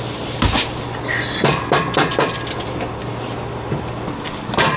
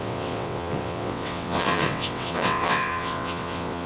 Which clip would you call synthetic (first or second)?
second